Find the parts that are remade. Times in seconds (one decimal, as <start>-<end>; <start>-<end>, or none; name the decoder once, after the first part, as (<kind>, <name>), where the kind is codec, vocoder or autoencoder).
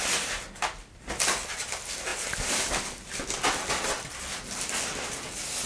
none